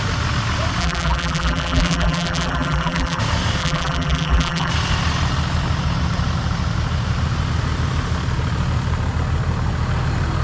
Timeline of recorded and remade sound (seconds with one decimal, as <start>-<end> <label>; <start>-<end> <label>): 0.0-0.8 recorded; 0.8-3.2 remade; 3.2-3.6 recorded; 3.6-4.7 remade; 4.7-10.4 recorded